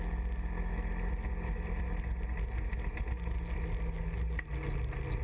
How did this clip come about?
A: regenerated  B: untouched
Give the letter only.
B